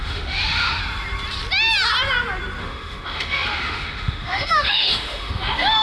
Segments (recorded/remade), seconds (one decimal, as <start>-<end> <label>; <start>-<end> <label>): 0.0-0.8 remade; 0.8-2.6 recorded; 2.6-5.8 remade